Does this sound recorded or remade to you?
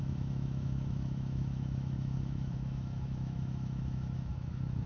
remade